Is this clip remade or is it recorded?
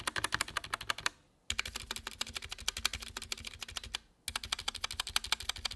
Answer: recorded